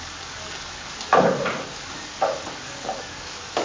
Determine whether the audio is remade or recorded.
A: remade